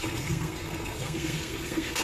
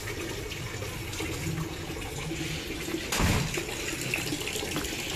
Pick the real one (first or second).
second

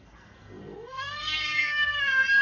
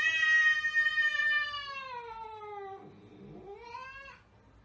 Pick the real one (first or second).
second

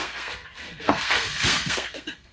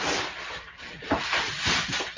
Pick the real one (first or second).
second